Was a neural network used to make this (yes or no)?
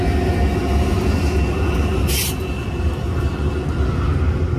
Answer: no